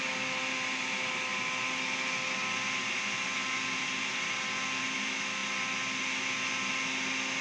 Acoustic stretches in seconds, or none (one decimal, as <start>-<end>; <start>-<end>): 0.0-7.4